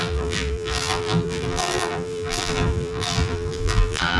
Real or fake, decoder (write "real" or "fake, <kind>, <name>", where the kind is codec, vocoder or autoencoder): fake, vocoder, BigVGAN v2